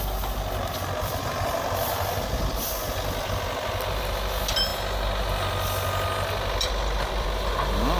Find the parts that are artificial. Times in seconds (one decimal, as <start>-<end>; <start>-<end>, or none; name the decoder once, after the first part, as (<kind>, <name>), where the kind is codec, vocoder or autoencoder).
none